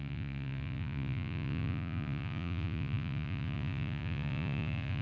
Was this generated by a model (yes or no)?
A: yes